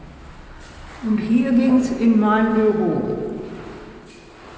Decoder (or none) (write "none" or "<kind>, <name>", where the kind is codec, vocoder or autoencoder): none